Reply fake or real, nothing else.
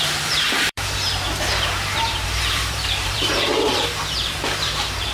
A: fake